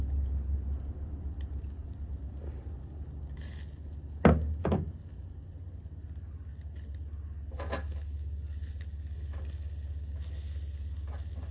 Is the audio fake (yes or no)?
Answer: no